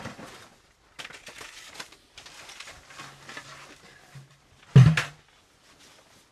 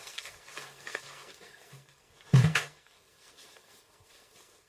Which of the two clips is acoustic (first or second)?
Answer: first